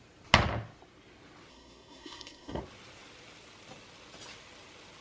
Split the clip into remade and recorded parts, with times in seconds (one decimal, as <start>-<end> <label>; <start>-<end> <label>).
0.0-1.5 recorded; 1.5-2.6 remade; 2.6-5.0 recorded